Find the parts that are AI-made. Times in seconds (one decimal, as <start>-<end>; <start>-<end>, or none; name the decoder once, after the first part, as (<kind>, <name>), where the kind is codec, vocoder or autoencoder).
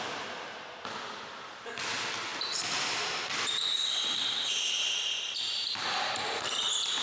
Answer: 0.0-7.0 (vocoder, BigVGAN v2)